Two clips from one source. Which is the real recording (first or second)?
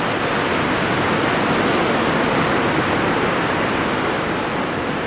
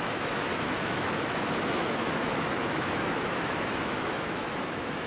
first